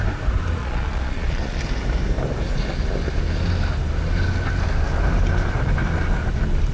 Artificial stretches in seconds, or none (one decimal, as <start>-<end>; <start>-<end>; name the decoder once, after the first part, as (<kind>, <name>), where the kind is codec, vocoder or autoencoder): 0.6-1.6 (vocoder, Vocos)